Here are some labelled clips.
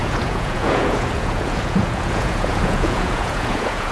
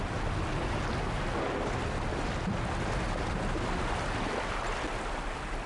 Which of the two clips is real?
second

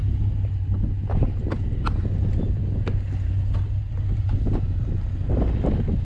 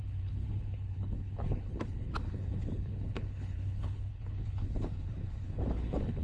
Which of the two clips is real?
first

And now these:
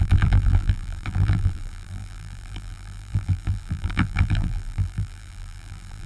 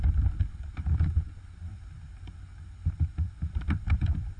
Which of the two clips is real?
second